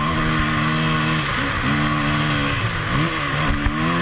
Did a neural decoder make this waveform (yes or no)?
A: no